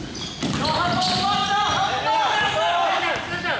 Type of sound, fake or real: real